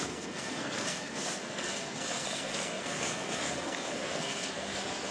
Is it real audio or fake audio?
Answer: fake